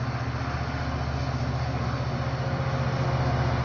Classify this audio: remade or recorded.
recorded